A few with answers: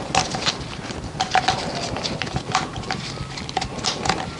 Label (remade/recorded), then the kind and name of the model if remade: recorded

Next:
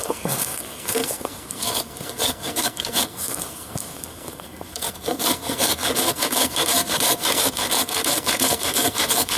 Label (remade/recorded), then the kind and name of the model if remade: remade, codec, SNAC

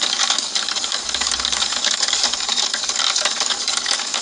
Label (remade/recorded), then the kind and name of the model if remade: remade, codec, DAC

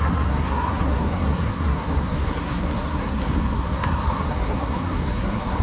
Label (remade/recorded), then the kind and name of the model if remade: remade, codec, SNAC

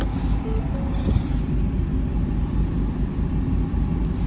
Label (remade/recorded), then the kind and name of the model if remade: recorded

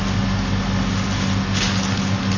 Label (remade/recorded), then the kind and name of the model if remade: recorded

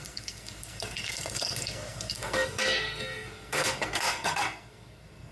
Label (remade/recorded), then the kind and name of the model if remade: remade, codec, SNAC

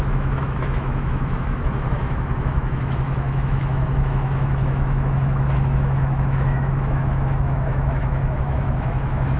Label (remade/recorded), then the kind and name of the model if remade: remade, autoencoder, DAC-VAE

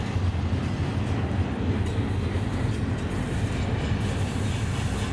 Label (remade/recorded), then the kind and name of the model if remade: recorded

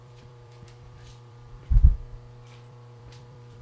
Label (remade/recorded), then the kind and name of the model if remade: remade, vocoder, BigVGAN v2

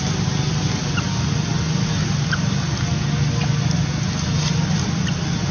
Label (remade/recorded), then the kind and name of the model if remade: recorded